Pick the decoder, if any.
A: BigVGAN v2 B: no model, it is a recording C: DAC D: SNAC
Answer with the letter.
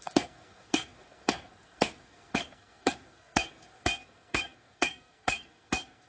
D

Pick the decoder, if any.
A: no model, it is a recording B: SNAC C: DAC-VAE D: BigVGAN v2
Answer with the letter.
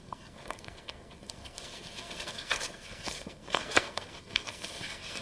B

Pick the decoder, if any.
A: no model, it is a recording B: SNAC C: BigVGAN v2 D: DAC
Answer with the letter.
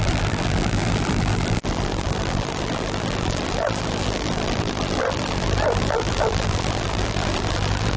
C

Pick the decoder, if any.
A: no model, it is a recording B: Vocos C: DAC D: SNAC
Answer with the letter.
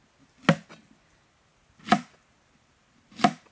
A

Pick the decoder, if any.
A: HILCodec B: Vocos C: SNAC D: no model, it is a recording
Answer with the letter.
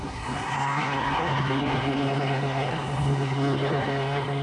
C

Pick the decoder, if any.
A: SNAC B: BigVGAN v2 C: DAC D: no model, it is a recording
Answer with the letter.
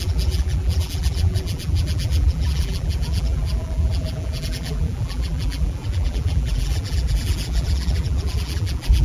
B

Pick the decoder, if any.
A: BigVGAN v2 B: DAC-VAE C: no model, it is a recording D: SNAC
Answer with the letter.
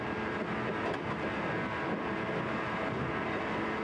C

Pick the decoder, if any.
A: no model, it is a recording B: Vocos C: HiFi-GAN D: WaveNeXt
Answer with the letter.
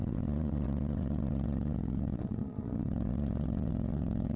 D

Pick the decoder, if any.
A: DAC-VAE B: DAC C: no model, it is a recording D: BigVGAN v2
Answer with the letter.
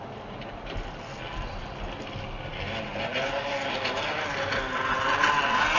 C